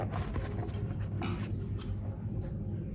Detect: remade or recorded recorded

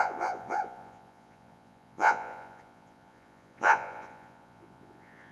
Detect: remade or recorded remade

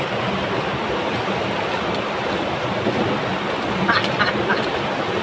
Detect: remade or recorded recorded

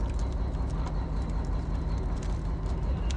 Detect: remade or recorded recorded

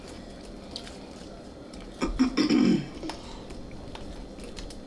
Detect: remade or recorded recorded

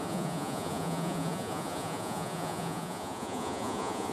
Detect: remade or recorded remade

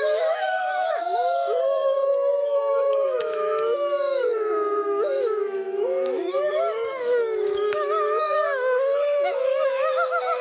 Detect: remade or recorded remade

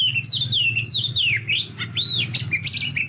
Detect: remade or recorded recorded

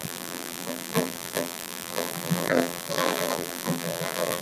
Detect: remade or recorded remade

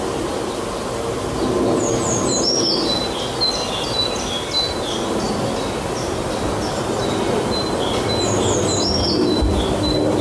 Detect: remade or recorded recorded